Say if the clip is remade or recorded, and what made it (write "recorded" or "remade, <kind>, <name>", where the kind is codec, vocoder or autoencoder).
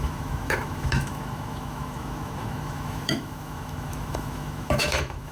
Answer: remade, autoencoder, DAC-VAE